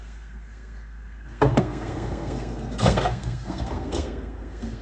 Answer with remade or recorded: remade